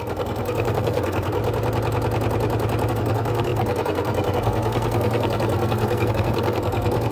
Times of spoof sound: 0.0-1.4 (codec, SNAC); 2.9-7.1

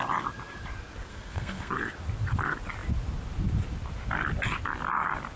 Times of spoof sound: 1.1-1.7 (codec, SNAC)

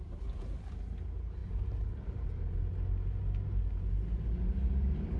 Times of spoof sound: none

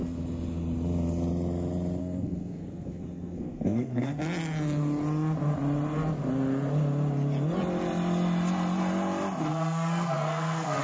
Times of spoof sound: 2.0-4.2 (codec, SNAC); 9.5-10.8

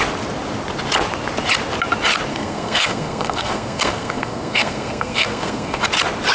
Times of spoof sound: 2.3-5.8 (codec, SNAC)

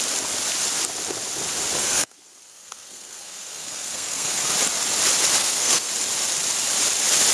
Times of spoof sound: 1.8-4.5 (codec, SNAC); 5.4-5.9

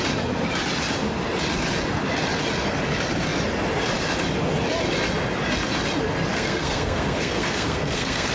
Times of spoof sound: 6.3-8.3 (codec, SNAC)

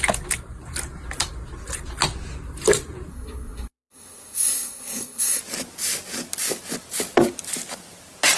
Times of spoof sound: 3.1-5.4 (codec, SNAC)